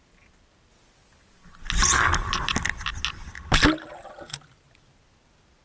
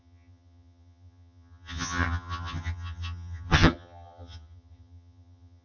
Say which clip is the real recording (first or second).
first